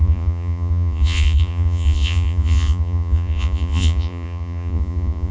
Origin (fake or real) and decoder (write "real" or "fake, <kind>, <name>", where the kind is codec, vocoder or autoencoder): fake, vocoder, Vocos